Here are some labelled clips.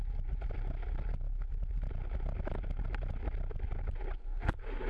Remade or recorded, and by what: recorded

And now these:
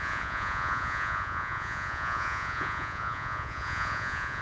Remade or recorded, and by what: remade, vocoder, Vocos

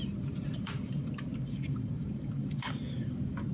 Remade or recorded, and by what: remade, vocoder, BigVGAN v2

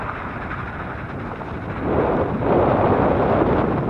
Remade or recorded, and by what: recorded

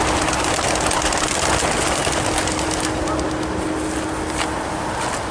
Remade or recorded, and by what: recorded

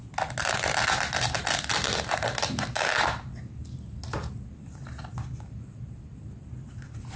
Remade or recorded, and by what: recorded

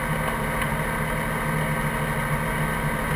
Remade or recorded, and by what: recorded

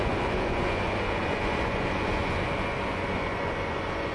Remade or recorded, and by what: remade, vocoder, Vocos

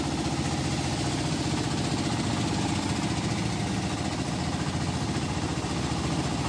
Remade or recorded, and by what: recorded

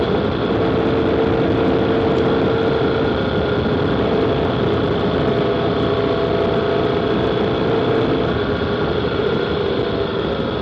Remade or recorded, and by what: recorded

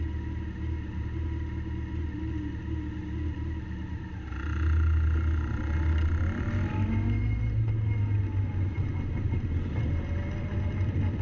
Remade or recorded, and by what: recorded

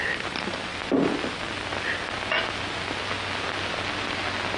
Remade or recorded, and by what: recorded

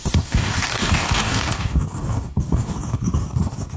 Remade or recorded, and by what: remade, codec, DAC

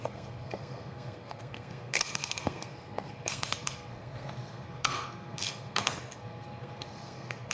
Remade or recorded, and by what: remade, codec, SNAC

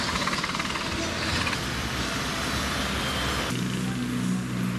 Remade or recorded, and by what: recorded